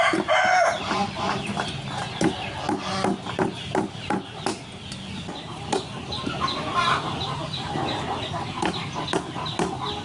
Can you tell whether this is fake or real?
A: real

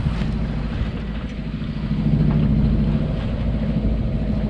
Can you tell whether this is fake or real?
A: real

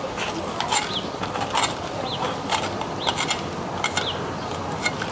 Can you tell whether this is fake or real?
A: real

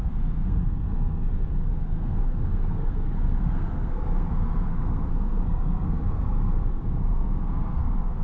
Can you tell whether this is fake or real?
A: fake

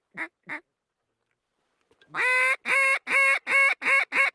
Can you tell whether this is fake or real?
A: real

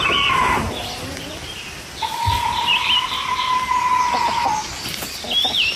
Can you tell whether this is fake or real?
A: fake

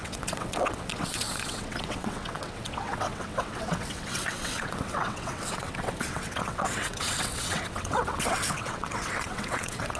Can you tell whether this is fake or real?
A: fake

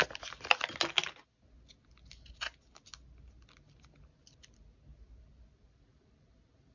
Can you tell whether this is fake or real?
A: real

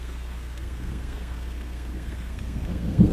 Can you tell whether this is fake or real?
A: fake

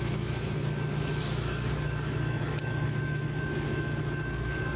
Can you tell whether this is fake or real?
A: fake